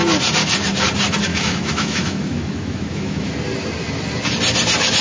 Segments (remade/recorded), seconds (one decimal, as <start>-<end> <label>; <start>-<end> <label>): 0.0-1.3 recorded; 1.3-3.3 remade; 3.3-5.0 recorded